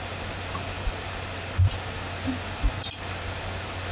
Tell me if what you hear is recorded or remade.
recorded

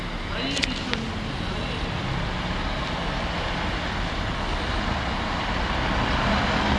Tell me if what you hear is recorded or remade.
recorded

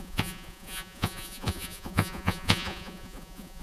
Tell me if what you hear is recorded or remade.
remade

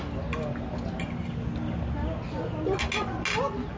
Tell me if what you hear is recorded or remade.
recorded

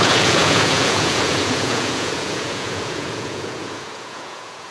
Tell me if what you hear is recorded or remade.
remade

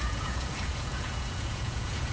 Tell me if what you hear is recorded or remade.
remade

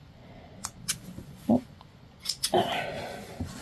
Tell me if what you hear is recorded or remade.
remade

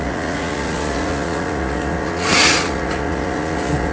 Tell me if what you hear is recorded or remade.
remade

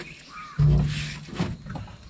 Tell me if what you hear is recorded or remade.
recorded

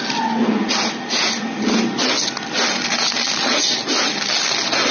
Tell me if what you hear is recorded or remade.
recorded